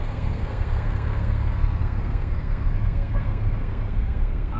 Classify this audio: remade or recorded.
remade